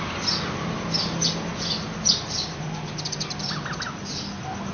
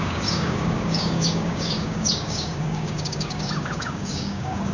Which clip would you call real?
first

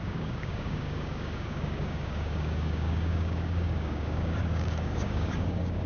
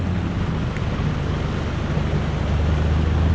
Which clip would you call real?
second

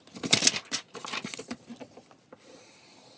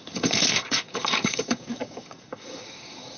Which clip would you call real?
first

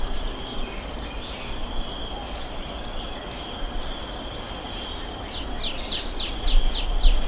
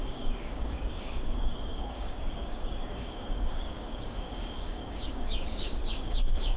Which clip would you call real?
first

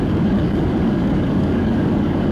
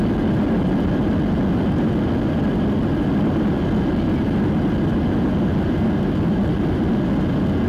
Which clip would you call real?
second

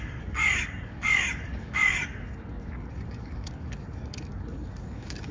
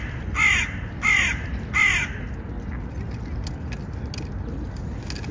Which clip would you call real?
second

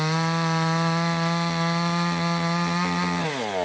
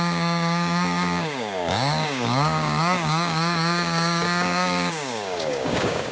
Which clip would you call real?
first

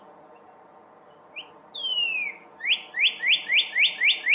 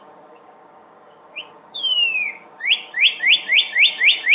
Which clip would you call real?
first